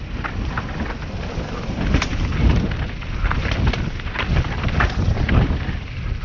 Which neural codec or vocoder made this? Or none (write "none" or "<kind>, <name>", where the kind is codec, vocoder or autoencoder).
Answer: vocoder, BigVGAN v2